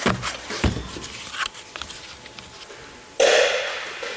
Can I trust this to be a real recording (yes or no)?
yes